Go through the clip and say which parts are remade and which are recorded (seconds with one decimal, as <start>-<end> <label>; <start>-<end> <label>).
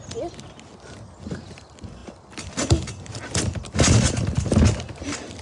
0.0-5.4 recorded